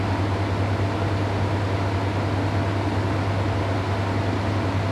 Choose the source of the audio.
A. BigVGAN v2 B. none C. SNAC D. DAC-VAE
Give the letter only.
B